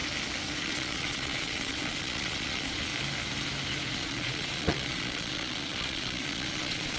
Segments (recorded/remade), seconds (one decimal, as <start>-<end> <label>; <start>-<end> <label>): 0.0-0.6 recorded; 0.6-2.9 remade; 2.9-3.9 recorded; 3.9-7.0 remade